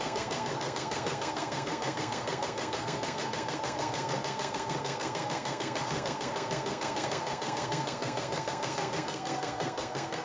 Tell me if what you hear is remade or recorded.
remade